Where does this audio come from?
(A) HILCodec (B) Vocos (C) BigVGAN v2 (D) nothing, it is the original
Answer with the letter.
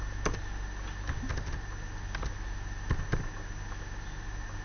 D